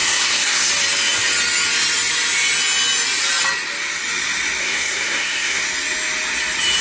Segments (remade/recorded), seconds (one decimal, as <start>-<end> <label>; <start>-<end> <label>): 0.0-0.7 remade; 0.7-4.6 recorded; 4.6-5.6 remade; 5.6-6.8 recorded